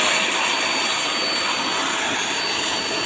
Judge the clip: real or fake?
real